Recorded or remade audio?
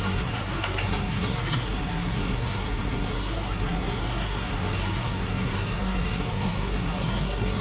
remade